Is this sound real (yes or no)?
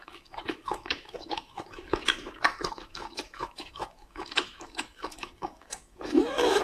no